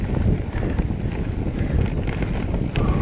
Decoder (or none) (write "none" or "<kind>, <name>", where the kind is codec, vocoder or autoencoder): none